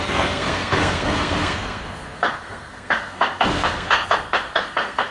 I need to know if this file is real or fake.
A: fake